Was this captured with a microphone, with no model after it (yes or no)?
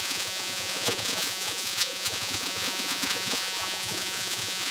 no